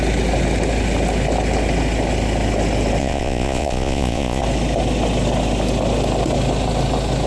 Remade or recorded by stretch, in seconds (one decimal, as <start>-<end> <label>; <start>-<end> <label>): 0.0-3.0 recorded; 3.0-4.4 remade; 4.4-7.3 recorded